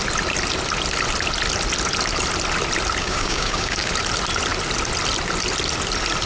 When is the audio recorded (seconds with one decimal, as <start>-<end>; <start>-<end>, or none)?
0.0-3.0; 3.9-6.3